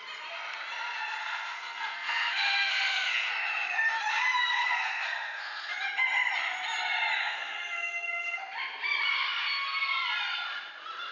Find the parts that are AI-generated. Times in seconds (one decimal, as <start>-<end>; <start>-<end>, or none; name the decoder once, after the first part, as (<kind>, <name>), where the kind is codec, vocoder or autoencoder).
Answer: 1.2-3.3 (codec, SNAC); 4.6-5.7; 7.2-8.4